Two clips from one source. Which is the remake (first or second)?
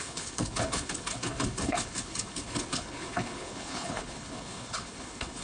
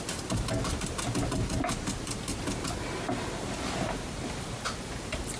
first